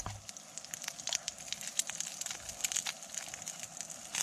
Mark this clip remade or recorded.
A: recorded